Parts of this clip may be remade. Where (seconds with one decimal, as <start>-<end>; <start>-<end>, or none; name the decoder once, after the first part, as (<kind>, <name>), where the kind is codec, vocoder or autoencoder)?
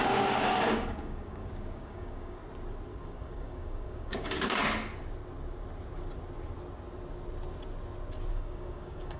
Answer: 0.0-2.4 (codec, DAC); 3.0-4.6; 8.3-9.2